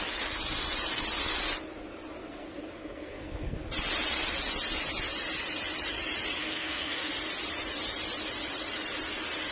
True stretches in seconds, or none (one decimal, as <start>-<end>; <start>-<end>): 0.0-2.2; 3.6-6.4; 7.1-9.5